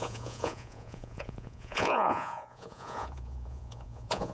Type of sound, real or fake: fake